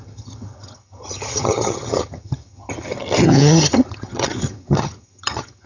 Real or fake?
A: fake